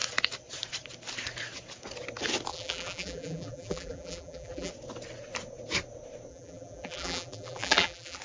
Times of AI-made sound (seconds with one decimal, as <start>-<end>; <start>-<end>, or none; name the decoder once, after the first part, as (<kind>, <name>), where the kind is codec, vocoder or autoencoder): 2.5-4.7 (vocoder, BigVGAN v2); 6.3-8.2